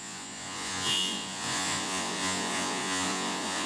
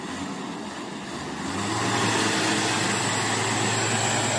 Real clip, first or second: second